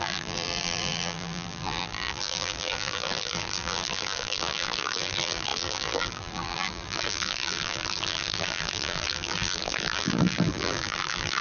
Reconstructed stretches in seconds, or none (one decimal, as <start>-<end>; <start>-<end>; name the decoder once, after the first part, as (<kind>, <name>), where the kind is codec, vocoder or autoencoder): 0.0-11.4 (vocoder, BigVGAN v2)